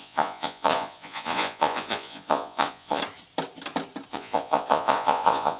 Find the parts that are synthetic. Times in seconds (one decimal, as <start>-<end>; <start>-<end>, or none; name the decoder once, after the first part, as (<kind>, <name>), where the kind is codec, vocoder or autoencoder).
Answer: 0.0-3.0 (vocoder, Vocos); 4.1-5.6